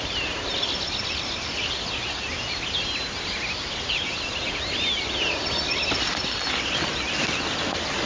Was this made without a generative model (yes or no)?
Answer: yes